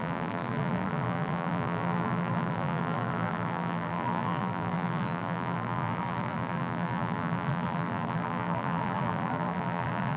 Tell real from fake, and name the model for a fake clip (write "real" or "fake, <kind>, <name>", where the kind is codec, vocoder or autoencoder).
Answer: fake, vocoder, BigVGAN v2